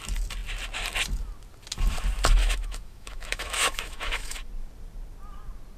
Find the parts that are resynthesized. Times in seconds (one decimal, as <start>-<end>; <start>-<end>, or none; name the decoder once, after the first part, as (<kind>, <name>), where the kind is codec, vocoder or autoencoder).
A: 2.4-4.5 (autoencoder, DAC-VAE)